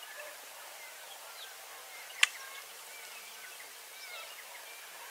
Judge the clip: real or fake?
real